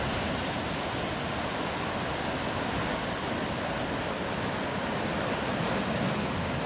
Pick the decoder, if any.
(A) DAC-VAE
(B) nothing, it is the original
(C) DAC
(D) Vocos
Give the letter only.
B